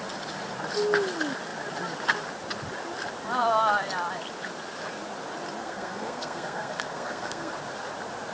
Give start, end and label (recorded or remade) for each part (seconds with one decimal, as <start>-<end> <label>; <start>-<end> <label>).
0.0-5.6 recorded; 5.6-7.5 remade; 7.5-8.3 recorded